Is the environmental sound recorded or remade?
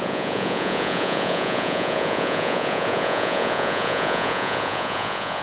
remade